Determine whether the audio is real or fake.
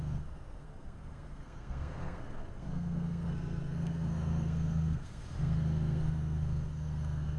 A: fake